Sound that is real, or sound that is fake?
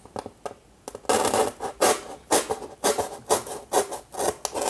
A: real